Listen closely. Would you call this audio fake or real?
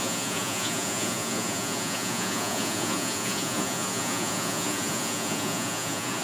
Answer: fake